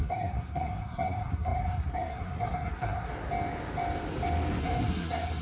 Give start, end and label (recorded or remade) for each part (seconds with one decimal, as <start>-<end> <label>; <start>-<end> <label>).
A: 0.0-3.1 remade; 3.1-4.6 recorded; 4.6-5.4 remade